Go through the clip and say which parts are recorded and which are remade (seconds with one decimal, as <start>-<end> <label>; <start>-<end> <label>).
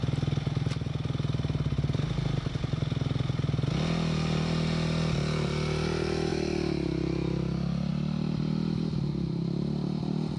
0.0-10.4 recorded